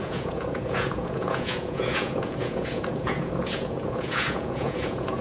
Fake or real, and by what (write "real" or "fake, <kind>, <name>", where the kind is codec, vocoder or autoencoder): fake, vocoder, Vocos